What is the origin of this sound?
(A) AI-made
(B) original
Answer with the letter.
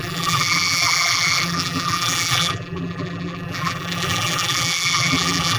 A